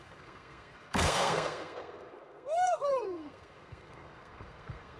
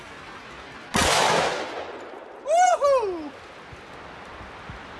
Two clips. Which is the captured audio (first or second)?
second